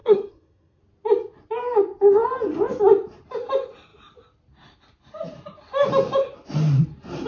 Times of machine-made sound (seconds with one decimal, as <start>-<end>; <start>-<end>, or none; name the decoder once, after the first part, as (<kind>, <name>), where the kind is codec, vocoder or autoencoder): 0.0-0.8 (codec, SNAC)

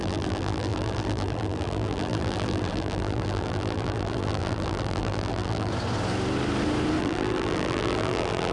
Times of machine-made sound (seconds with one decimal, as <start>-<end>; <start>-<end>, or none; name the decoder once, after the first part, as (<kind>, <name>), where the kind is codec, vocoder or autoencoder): 0.0-5.7 (vocoder, BigVGAN v2); 7.0-8.5

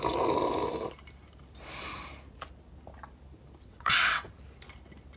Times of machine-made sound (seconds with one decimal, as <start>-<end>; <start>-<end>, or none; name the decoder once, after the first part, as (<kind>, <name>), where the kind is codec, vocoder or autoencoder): 3.6-4.3 (vocoder, WaveNeXt)